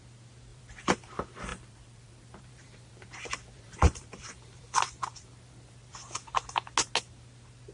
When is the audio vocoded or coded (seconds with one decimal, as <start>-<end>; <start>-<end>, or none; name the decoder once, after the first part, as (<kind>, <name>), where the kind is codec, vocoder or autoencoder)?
0.5-1.1 (vocoder, BigVGAN v2); 1.5-6.0